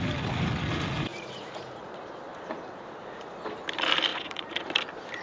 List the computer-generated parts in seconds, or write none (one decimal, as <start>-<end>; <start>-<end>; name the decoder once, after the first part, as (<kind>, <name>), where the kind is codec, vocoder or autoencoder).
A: 1.1-1.9 (vocoder, Vocos); 4.1-4.7